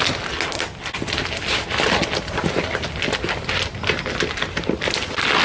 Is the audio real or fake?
real